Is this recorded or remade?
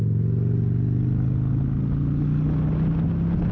recorded